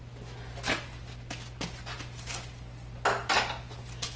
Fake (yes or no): no